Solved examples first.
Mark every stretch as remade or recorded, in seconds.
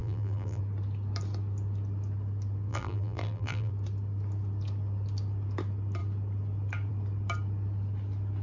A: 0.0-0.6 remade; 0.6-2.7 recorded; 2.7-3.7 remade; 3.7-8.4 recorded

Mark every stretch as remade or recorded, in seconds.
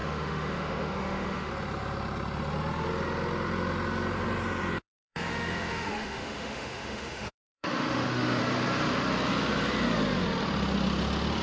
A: 0.0-1.5 remade; 1.5-4.8 recorded; 4.8-8.4 remade; 8.4-11.4 recorded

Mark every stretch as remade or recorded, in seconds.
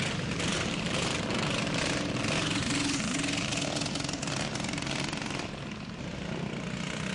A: 0.0-0.5 recorded; 0.5-1.2 remade; 1.2-7.1 recorded